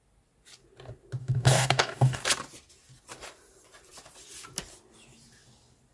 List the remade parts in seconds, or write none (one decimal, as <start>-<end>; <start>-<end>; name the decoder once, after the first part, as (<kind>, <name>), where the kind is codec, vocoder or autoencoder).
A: 1.2-2.2 (codec, DAC)